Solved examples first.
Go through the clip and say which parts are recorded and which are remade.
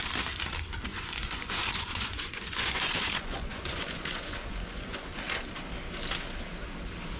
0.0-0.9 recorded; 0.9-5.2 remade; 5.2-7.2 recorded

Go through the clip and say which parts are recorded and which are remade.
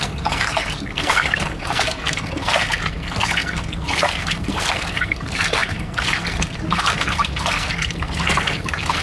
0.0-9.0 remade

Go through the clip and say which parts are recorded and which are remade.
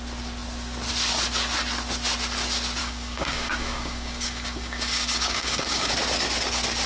0.0-2.8 recorded; 2.8-5.9 remade; 5.9-6.9 recorded